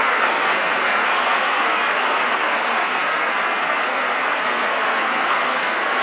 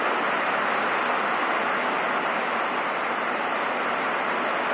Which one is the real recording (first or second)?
second